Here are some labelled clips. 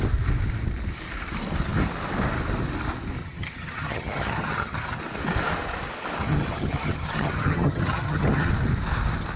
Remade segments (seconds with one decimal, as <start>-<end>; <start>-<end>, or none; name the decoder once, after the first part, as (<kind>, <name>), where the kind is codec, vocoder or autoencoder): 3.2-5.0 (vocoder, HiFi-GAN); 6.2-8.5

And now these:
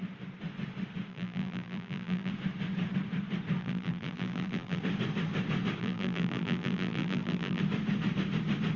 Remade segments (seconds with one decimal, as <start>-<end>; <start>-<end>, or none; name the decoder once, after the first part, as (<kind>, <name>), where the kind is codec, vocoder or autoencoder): 1.1-2.3 (vocoder, BigVGAN v2); 3.6-4.8; 5.8-7.6

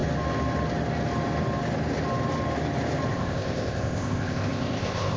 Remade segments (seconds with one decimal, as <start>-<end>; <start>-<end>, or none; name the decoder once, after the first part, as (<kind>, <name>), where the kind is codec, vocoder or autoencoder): 3.1-5.2 (codec, ZipCodec)

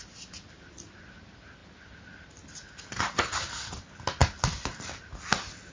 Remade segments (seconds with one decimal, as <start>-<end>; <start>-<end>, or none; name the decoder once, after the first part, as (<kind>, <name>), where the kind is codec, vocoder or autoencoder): none

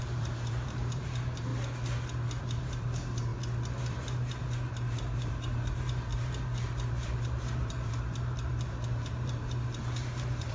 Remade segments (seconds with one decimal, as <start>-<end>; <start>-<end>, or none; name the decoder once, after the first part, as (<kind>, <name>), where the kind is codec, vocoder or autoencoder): 0.0-1.5 (vocoder, BigVGAN v2); 2.4-3.3; 3.8-10.5